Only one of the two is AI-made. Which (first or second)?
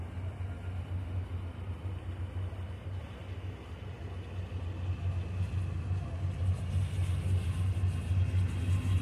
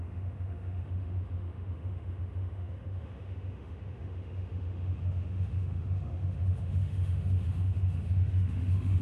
second